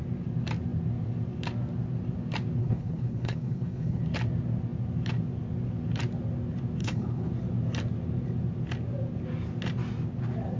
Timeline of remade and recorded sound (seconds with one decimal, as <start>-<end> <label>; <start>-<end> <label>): 0.0-2.6 recorded; 2.6-4.0 remade; 4.0-6.8 recorded; 6.8-7.3 remade; 7.3-10.6 recorded